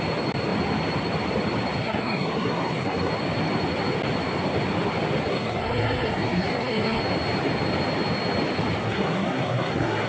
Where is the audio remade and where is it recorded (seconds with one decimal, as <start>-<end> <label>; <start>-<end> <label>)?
0.0-1.8 recorded; 1.8-3.1 remade; 3.1-5.3 recorded; 5.3-7.0 remade; 7.0-8.8 recorded; 8.8-10.1 remade